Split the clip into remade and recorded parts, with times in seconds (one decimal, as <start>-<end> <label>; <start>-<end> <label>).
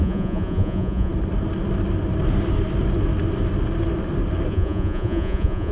0.0-1.1 remade; 1.1-4.5 recorded; 4.5-5.7 remade